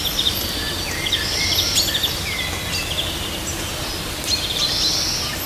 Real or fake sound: real